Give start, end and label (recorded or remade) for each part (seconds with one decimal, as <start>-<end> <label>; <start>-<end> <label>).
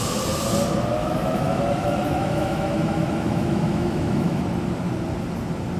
0.0-1.0 recorded; 1.0-4.4 remade; 4.4-5.8 recorded